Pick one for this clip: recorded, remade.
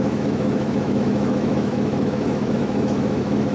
remade